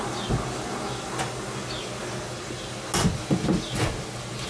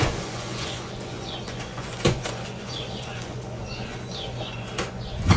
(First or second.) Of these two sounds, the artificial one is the second